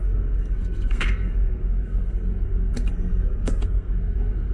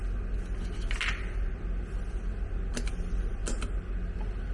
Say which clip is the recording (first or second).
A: second